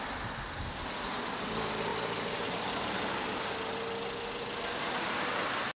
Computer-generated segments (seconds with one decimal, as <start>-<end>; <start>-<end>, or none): none